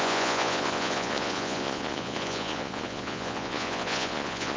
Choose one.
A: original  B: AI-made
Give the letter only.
B